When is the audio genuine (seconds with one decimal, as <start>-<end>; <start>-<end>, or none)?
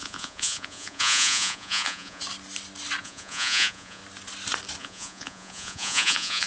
2.2-3.0; 4.0-4.8